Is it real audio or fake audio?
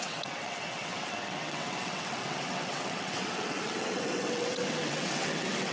fake